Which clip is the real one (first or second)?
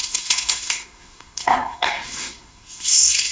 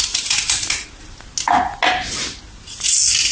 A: second